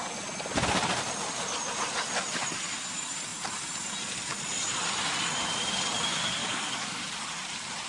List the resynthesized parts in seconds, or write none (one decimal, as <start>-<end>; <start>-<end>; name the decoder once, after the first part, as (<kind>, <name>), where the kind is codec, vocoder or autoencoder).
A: 6.4-7.0 (codec, DAC)